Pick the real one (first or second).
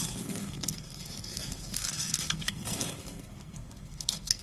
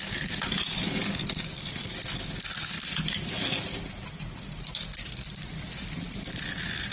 second